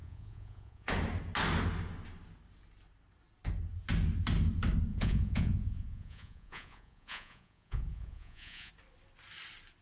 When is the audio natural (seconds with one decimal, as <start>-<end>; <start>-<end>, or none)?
0.9-4.9; 8.7-9.8